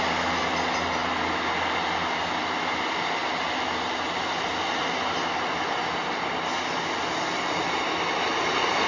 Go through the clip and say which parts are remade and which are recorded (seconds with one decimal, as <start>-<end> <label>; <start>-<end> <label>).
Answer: 0.0-8.9 recorded